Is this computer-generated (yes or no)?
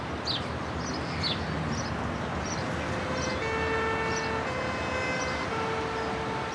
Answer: no